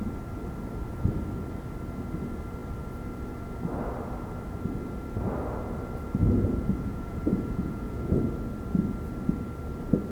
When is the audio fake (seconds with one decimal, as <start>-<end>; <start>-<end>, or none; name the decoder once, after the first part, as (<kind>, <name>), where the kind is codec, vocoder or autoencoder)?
6.2-8.2 (vocoder, Vocos)